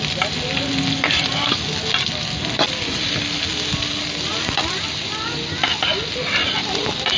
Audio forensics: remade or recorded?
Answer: recorded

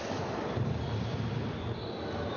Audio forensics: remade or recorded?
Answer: recorded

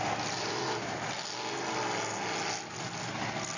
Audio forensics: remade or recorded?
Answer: recorded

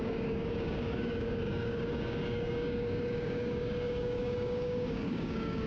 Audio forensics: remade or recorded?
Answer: remade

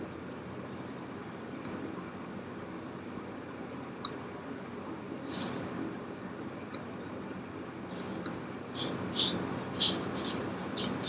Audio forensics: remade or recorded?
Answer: recorded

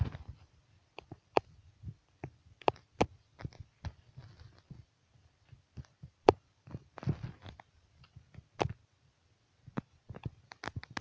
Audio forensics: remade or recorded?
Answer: recorded